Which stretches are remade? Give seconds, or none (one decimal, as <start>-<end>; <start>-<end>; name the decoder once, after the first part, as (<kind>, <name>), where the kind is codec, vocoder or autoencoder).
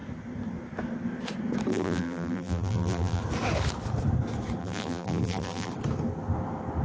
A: 1.7-3.2 (vocoder, BigVGAN v2); 4.6-5.7